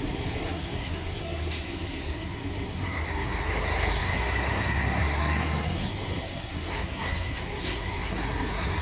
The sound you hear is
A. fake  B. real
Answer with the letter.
A